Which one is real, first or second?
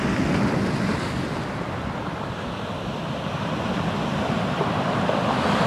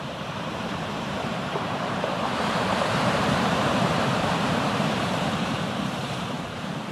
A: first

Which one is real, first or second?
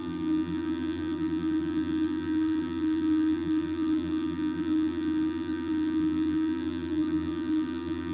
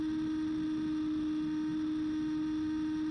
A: second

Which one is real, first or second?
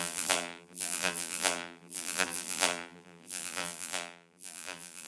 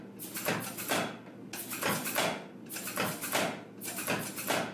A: second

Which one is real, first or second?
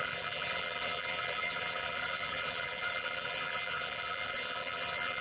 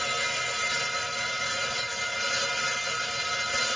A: second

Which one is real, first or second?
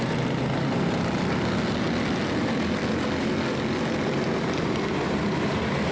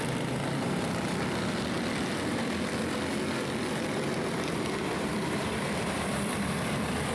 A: first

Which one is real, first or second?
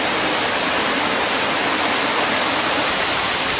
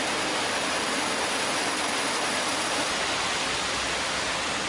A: second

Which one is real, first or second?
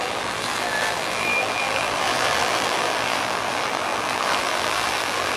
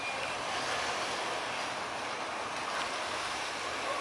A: second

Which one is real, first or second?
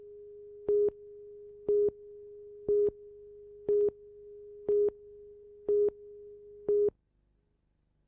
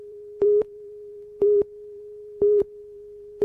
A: first